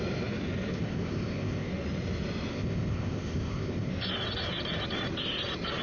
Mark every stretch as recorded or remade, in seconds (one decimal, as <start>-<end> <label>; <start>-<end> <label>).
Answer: 0.0-0.7 recorded; 0.7-1.7 remade; 1.7-2.5 recorded; 2.5-3.9 remade; 3.9-5.8 recorded